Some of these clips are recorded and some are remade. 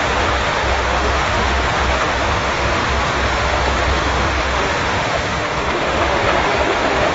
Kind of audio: remade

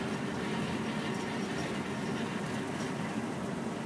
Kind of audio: recorded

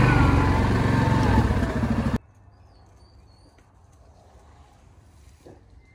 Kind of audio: recorded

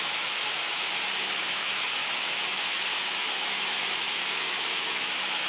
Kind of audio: remade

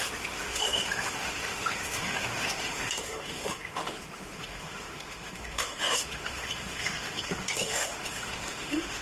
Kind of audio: remade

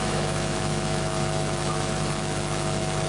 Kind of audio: remade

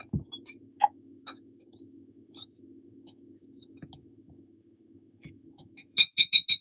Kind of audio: remade